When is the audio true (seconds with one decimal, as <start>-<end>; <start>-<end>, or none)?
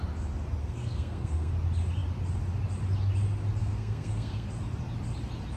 0.0-0.6; 1.5-3.6; 4.5-5.6